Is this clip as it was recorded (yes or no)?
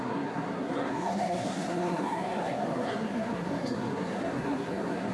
no